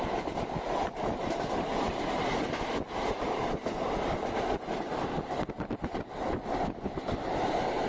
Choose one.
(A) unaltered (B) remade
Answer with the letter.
A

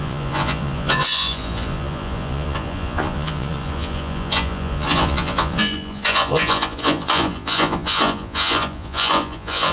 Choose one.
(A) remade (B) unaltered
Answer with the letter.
A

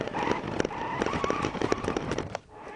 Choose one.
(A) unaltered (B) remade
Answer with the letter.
B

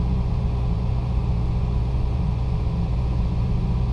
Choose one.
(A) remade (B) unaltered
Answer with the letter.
A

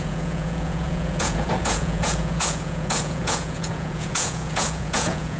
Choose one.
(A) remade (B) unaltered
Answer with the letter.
A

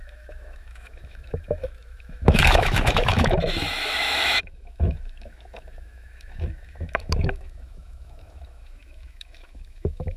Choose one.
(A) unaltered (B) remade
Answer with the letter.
B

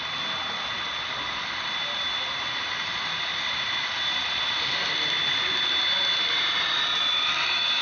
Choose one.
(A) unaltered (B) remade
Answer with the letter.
A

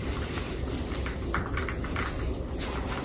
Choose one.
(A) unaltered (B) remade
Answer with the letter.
A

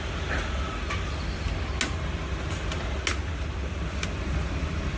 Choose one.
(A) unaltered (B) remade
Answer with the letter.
A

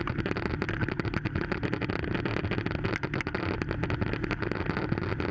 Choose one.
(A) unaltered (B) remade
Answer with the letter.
A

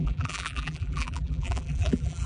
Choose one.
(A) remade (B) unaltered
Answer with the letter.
A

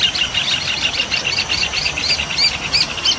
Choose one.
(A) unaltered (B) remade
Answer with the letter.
A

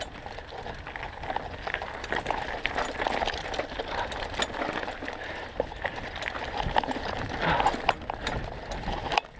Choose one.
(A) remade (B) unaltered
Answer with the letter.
B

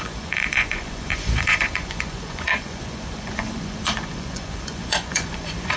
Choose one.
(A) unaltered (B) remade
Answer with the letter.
B